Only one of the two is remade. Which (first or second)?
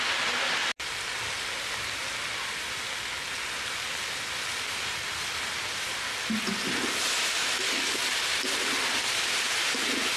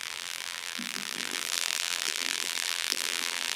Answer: second